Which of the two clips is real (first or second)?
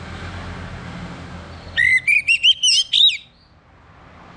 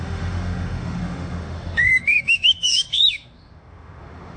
first